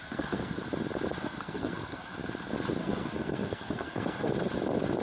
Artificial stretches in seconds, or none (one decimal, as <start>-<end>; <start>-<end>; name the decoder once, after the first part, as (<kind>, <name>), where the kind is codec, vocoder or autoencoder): 0.0-0.6 (codec, SNAC); 1.2-2.1; 2.8-4.3